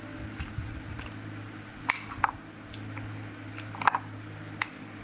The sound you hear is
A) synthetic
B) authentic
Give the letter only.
B